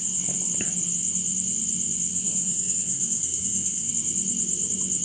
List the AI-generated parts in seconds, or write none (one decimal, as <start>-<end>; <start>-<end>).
2.1-3.9